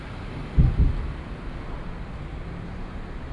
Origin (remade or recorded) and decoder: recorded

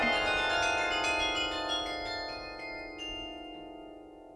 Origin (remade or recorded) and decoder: recorded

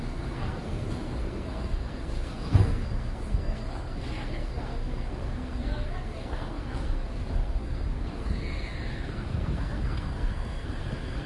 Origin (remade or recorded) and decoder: remade, codec, SNAC